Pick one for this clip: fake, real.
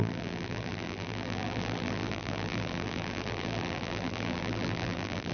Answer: fake